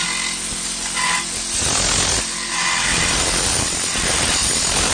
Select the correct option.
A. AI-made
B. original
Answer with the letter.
B